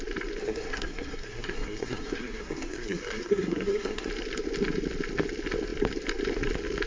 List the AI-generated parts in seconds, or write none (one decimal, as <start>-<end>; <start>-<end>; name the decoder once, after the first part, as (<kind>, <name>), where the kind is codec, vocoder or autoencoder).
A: 0.4-4.1 (codec, SNAC)